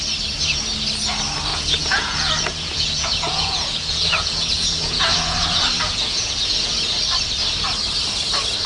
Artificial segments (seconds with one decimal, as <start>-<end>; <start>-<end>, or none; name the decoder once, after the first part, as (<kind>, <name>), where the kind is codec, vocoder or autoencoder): 1.5-6.7 (vocoder, Vocos)